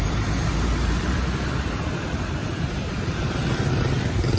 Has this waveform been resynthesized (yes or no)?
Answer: yes